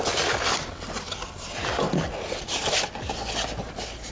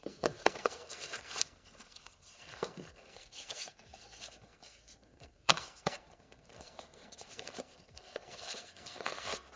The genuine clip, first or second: first